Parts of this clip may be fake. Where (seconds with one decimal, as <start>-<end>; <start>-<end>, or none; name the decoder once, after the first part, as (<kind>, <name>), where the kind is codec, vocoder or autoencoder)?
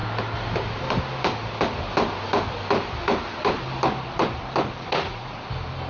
4.9-5.5 (vocoder, Vocos)